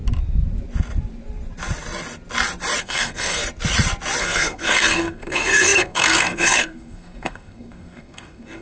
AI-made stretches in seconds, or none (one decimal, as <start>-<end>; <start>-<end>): 2.8-3.4; 4.2-8.6